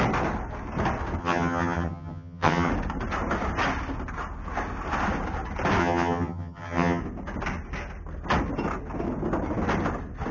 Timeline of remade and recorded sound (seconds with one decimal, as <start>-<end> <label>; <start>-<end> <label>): 0.0-1.2 recorded; 1.2-2.7 remade; 2.7-5.8 recorded; 5.8-7.0 remade; 7.0-10.3 recorded